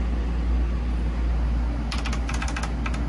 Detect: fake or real real